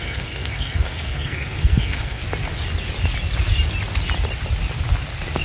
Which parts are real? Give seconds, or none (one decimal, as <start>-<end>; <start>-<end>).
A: 2.2-5.4